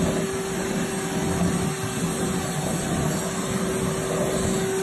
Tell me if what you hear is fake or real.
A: real